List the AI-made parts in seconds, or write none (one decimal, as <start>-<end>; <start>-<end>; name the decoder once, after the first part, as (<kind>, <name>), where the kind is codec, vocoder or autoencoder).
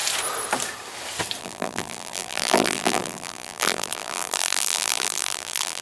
1.4-5.8 (vocoder, BigVGAN v2)